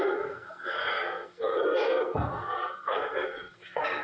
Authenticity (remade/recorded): remade